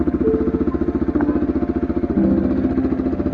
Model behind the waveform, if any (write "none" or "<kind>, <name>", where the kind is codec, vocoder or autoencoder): none